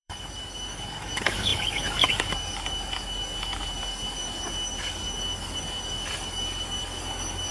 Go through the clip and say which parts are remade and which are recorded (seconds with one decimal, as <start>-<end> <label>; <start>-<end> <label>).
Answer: 0.0-7.5 remade